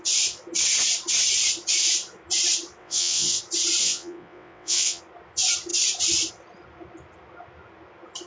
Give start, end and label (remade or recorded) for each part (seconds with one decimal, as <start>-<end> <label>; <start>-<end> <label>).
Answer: 0.0-2.8 recorded; 2.8-3.4 remade; 3.4-3.8 recorded; 3.8-5.0 remade; 5.0-8.3 recorded